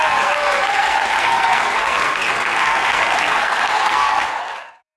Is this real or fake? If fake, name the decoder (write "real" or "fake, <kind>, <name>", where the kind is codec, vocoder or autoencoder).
fake, codec, SNAC